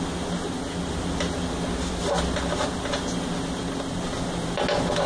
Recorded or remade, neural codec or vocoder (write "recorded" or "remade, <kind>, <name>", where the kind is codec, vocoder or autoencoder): recorded